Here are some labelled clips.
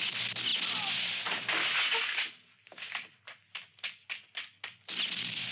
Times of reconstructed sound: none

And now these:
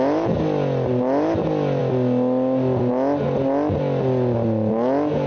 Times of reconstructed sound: none

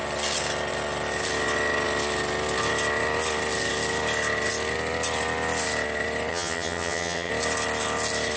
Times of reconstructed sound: 6.3-7.3 (vocoder, HiFi-GAN)

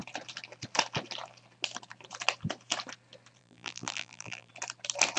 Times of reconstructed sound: 3.4-4.5 (vocoder, BigVGAN v2)